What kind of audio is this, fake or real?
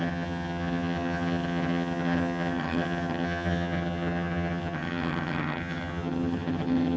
fake